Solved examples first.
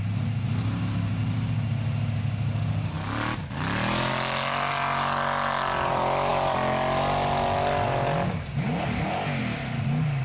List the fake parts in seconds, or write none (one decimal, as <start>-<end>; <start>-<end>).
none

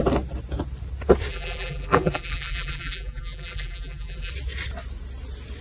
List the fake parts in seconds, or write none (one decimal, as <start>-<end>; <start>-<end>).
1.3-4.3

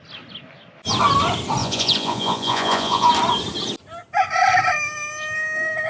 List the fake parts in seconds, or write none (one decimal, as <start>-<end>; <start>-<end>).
1.6-3.1

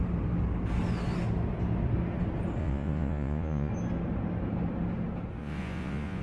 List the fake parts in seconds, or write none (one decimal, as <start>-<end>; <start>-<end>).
2.6-3.7; 5.4-6.2

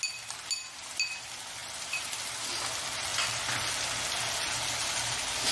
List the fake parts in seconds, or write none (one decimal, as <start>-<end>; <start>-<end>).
1.6-2.3

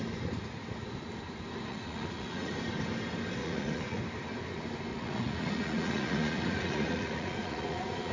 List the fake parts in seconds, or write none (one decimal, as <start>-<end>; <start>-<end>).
1.7-2.5; 3.4-4.0; 4.9-8.1

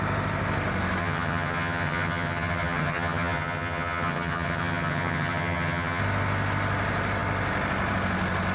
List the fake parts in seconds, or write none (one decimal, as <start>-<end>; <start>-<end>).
1.0-6.0